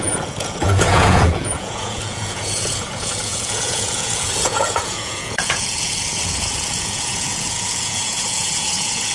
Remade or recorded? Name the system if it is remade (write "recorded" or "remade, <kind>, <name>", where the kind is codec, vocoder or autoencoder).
remade, vocoder, Vocos